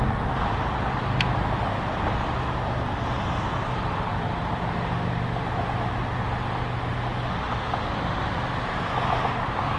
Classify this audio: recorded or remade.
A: recorded